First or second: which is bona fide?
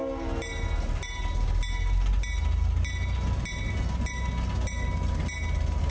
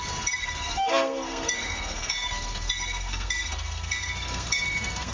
first